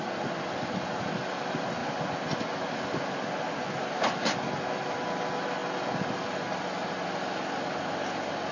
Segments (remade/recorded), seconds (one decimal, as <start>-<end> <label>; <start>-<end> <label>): 0.0-8.5 recorded